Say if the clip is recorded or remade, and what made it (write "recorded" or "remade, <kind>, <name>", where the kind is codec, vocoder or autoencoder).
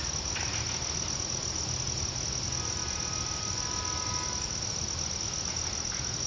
recorded